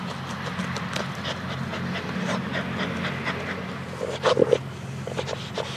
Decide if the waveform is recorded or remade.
recorded